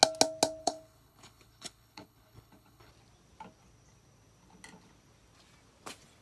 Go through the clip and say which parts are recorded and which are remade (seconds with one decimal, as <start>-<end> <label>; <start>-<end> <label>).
0.0-0.6 recorded; 0.6-2.9 remade; 2.9-6.2 recorded